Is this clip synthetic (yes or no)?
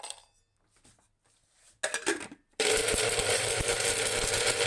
no